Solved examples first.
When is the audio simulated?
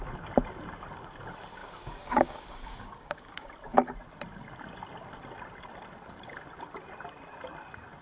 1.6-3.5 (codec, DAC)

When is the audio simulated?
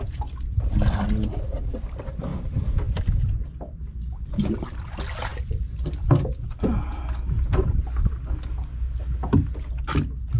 none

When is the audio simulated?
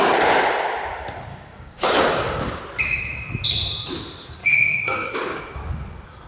1.3-2.6 (codec, DAC); 4.4-5.4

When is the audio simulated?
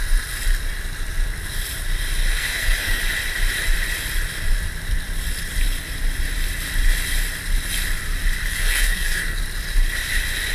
2.3-3.0 (codec, SNAC); 8.5-9.4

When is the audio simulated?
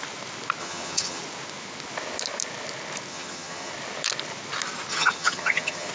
0.6-1.2 (vocoder, HiFi-GAN); 3.1-3.7; 4.9-5.9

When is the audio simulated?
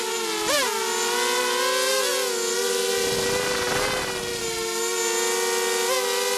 none